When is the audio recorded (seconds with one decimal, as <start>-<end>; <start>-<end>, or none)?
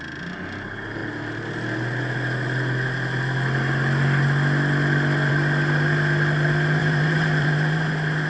0.0-6.8; 7.9-8.3